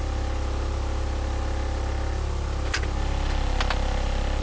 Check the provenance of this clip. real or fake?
real